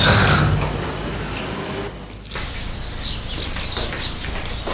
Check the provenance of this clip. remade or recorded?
recorded